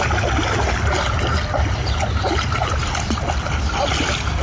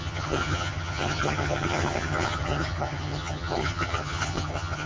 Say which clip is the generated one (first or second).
second